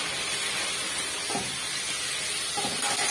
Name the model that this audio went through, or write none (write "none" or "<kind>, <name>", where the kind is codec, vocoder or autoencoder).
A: none